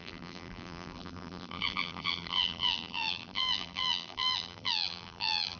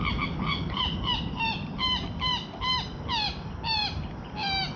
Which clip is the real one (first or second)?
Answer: second